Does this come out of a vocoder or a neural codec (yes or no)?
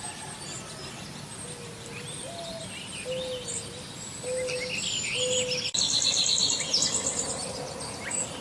no